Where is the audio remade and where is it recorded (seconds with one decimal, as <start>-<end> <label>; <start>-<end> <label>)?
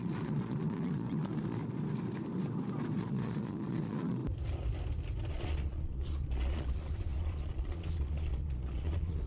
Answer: 0.0-1.6 remade; 1.6-3.0 recorded; 3.0-4.2 remade; 4.2-5.3 recorded; 5.3-9.3 remade